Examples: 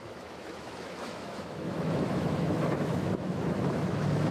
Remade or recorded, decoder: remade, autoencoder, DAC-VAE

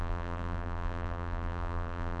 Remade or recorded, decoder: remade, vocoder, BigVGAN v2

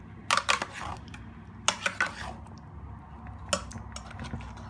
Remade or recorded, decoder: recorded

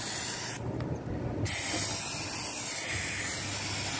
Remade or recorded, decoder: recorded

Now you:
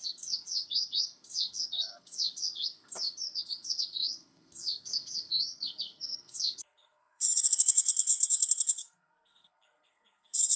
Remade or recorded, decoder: remade, codec, SNAC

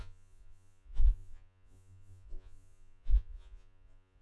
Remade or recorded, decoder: remade, vocoder, Vocos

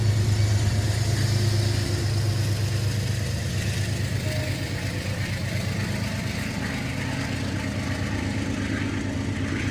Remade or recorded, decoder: recorded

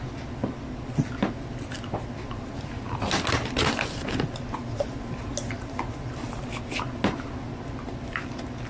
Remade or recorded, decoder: recorded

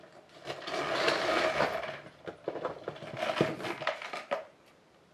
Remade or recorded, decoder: recorded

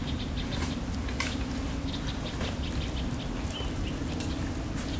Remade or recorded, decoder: remade, vocoder, BigVGAN v2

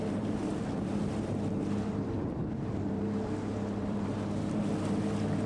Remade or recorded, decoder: remade, vocoder, BigVGAN v2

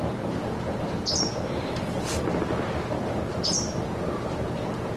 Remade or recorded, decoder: recorded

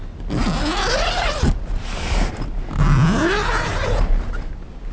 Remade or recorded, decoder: recorded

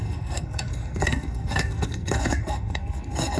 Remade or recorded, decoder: remade, codec, SNAC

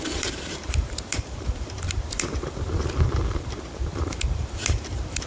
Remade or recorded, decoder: remade, vocoder, BigVGAN v2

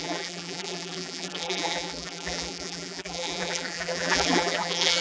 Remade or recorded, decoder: remade, vocoder, BigVGAN v2